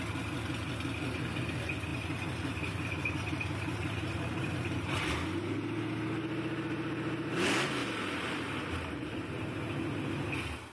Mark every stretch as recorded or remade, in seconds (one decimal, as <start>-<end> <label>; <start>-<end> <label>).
0.0-1.9 recorded; 1.9-5.1 remade; 5.1-7.8 recorded; 7.8-9.2 remade; 9.2-10.7 recorded